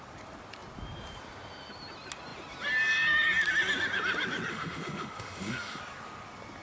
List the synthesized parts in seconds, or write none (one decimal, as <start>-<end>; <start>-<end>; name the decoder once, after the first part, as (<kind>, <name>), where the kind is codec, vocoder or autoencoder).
4.5-5.8 (autoencoder, DAC-VAE)